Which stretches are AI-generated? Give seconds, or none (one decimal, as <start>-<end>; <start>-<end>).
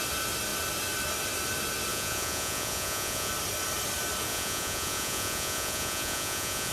1.9-3.3; 4.3-6.7